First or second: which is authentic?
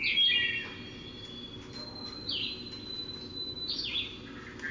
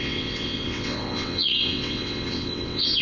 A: first